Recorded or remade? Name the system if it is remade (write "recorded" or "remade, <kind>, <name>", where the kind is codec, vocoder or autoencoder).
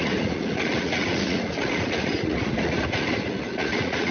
remade, vocoder, Vocos